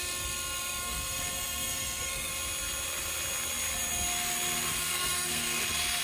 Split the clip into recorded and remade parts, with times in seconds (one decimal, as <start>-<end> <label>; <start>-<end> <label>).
0.0-0.8 recorded; 0.8-2.3 remade; 2.3-4.9 recorded; 4.9-5.6 remade; 5.6-6.0 recorded